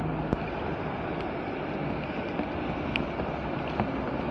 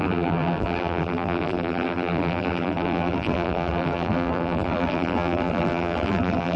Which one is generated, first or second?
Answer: second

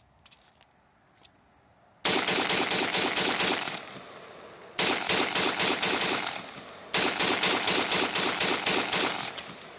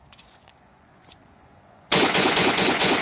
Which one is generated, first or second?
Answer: second